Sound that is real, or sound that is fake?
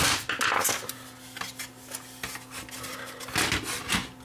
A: real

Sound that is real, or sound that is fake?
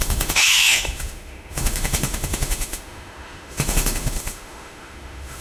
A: fake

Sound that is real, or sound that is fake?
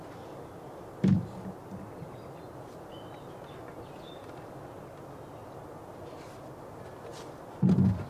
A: real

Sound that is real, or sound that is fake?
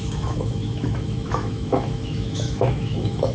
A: fake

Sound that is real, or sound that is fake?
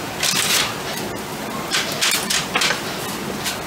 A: real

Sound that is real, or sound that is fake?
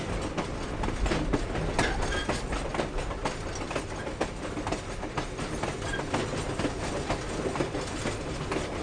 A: real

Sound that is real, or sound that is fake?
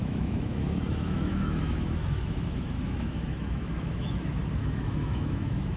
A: fake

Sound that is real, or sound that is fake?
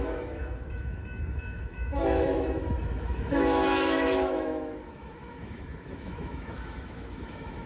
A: fake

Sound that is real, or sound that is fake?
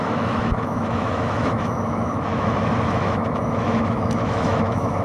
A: fake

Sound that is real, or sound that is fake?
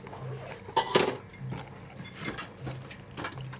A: real